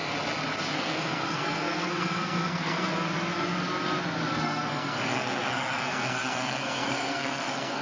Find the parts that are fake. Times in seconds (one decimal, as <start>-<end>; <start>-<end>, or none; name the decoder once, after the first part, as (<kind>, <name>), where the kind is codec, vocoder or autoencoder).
0.7-2.9 (codec, SNAC); 4.3-7.8

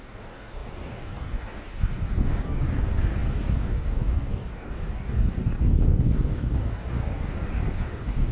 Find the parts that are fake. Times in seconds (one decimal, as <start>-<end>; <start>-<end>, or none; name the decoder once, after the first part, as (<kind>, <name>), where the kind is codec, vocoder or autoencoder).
0.0-8.3 (codec, DAC)

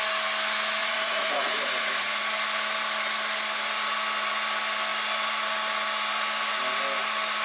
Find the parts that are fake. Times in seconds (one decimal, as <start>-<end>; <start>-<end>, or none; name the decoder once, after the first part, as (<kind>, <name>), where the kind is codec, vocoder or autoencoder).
0.8-2.2 (vocoder, Vocos)

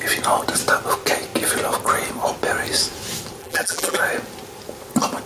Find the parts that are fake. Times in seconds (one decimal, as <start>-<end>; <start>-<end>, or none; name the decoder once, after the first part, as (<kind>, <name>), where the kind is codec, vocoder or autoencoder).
3.4-4.0 (vocoder, BigVGAN v2)

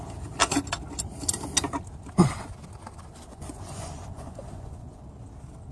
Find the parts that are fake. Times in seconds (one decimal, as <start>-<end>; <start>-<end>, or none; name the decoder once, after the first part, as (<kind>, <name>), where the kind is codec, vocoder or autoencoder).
3.3-5.0 (vocoder, Vocos)